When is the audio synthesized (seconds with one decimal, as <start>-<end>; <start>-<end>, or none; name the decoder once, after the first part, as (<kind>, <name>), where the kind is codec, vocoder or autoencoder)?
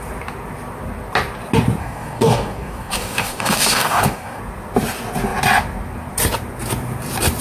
1.8-4.4 (codec, DAC)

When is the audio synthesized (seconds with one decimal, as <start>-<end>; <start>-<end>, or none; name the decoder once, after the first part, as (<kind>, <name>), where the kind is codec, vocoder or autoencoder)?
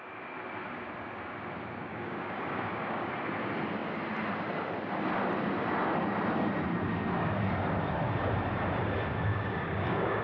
1.9-3.1 (codec, DAC); 9.3-10.2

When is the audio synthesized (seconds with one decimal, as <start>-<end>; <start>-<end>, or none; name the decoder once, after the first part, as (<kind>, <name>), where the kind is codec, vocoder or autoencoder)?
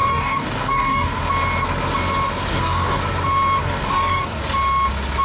0.0-1.2 (codec, DAC); 2.5-3.0; 3.6-4.4